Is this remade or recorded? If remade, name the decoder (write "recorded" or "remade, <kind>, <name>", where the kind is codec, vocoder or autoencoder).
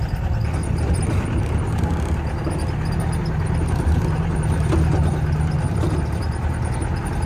recorded